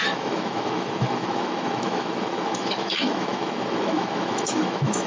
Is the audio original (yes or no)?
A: no